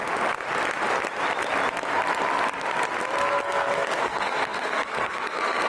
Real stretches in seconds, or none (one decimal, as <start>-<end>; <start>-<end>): 0.0-3.4